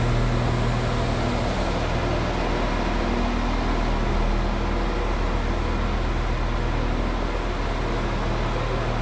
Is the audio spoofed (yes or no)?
no